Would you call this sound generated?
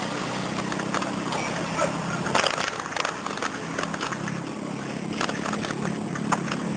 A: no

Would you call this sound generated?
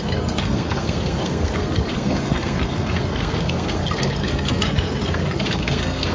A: yes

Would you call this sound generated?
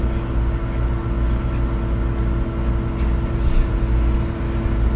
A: no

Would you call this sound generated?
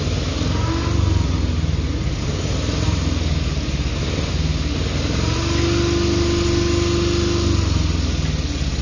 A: no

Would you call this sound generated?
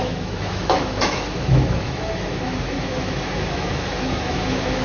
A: yes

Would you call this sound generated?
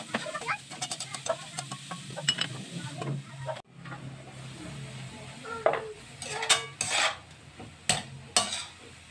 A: no